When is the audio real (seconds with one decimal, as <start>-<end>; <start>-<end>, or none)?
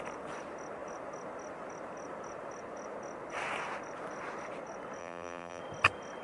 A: 0.0-5.0; 5.6-6.2